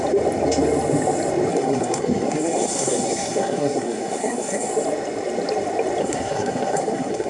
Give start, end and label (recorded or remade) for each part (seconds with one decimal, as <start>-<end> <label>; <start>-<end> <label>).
0.0-1.5 recorded; 1.5-4.7 remade; 4.7-6.0 recorded; 6.0-7.3 remade